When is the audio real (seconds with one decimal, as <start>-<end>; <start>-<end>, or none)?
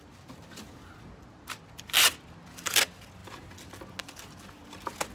0.0-5.1